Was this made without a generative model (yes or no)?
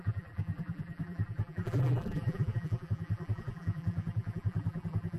no